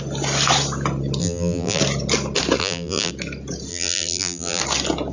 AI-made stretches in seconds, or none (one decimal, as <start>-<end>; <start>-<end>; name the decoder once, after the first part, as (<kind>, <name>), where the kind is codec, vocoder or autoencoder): 1.2-1.8 (vocoder, BigVGAN v2); 2.6-3.1; 3.7-4.6